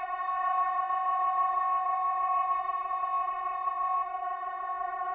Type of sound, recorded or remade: remade